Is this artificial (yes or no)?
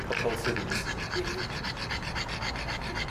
no